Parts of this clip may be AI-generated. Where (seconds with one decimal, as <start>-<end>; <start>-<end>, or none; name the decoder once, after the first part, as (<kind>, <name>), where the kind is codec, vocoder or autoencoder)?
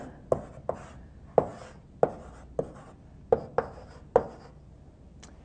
none